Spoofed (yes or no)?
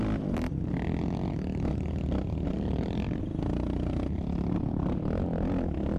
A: no